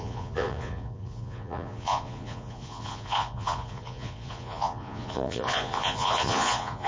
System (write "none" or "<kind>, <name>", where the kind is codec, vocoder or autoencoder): vocoder, Vocos